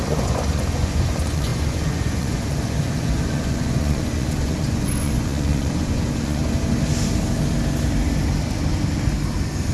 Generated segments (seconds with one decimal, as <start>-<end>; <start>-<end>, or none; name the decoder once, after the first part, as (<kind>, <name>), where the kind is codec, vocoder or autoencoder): 0.0-6.4 (vocoder, Vocos)